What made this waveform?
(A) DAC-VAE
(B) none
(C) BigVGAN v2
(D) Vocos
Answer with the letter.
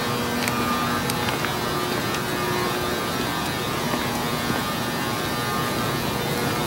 B